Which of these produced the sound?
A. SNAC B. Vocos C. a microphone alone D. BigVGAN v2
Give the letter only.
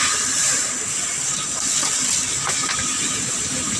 C